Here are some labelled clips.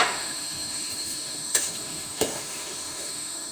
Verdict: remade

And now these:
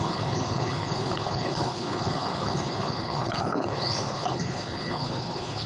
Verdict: remade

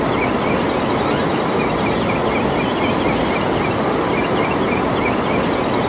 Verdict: recorded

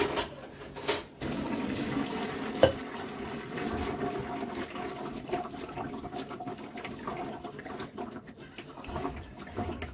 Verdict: recorded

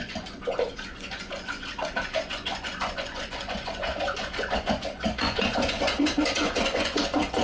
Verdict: remade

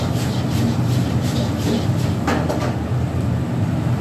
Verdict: recorded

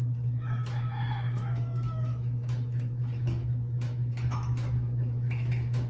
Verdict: remade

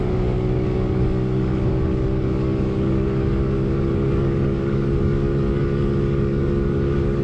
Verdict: remade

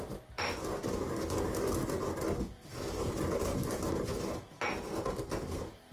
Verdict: recorded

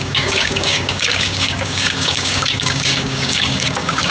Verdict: remade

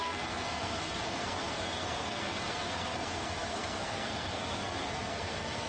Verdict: remade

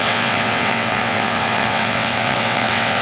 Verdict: remade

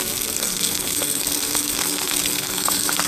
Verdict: remade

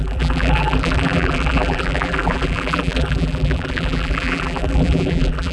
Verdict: remade